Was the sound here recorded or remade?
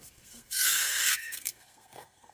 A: remade